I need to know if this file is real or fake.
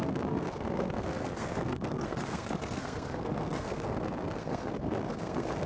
fake